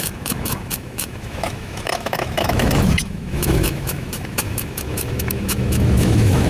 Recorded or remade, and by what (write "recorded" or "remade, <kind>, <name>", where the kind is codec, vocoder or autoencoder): remade, autoencoder, DAC-VAE